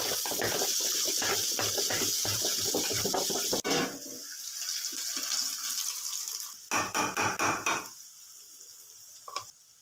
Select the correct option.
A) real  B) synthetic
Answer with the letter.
A